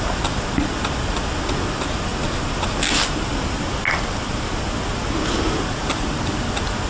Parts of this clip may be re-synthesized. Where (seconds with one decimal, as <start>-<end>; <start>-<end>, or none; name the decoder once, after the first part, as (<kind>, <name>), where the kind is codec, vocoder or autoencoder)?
none